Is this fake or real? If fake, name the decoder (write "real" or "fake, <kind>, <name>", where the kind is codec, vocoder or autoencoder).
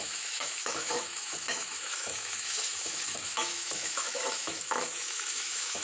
fake, autoencoder, DAC-VAE